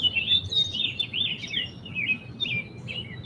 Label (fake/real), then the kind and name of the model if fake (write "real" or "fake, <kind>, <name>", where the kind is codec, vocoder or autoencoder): real